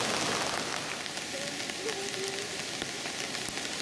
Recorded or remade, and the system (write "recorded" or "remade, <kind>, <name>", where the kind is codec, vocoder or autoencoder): recorded